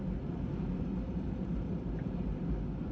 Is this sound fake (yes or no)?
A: no